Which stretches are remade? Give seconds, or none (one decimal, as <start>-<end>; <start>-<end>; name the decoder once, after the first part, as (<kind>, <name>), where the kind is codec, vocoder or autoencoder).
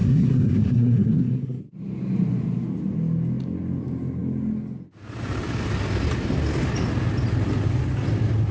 0.0-1.6 (codec, SNAC)